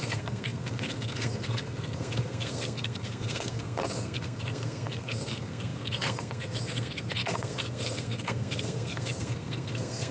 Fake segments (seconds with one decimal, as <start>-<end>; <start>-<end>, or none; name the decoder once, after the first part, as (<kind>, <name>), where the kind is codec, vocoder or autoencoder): 0.0-10.1 (codec, SNAC)